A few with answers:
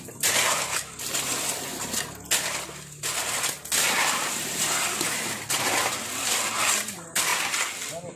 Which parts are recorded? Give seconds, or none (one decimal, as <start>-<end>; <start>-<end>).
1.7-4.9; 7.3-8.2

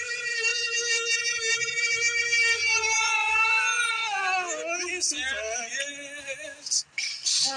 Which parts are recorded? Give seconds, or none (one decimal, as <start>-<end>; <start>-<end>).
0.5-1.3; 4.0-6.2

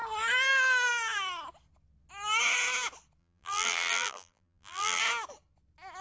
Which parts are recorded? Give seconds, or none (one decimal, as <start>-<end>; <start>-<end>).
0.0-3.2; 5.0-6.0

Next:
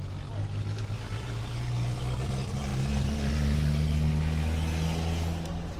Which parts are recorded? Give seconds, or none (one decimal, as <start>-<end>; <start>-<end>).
0.0-0.4; 2.0-5.8